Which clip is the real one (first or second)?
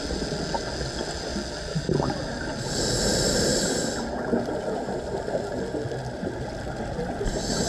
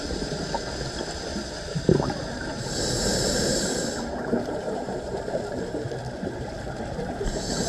first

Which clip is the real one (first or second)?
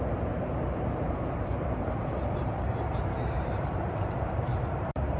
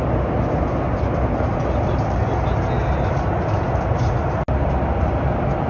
second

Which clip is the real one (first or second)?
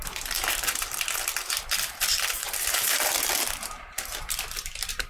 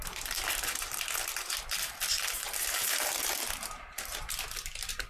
second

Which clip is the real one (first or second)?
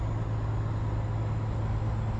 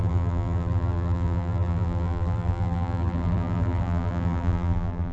first